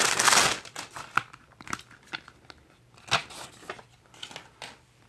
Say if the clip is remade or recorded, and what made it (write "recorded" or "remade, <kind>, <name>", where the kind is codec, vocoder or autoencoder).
recorded